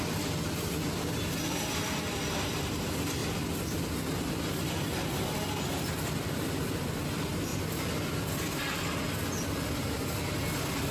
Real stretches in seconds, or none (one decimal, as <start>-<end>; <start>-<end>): 0.0-10.9

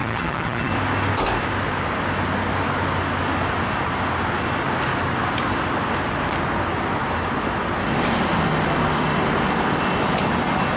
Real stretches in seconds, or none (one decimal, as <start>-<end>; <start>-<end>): 0.7-10.8

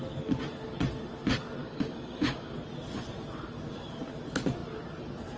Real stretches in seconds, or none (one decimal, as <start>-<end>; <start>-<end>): 0.0-1.6; 2.5-5.4

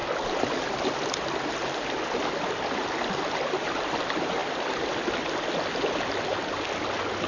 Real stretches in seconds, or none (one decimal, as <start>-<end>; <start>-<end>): 0.0-7.3

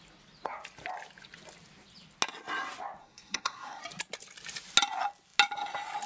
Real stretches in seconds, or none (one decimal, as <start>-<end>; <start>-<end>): 0.0-3.0; 3.8-6.1

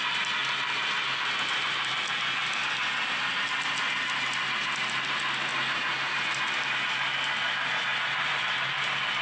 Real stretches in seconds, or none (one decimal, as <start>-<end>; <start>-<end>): 0.0-5.5; 6.3-9.2